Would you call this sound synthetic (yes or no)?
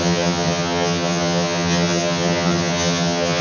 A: yes